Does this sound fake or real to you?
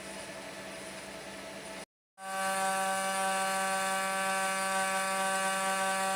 real